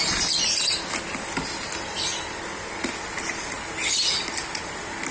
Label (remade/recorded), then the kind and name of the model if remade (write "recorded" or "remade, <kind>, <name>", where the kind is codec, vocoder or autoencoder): recorded